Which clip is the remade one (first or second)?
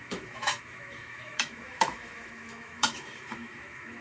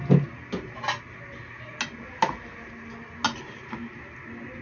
first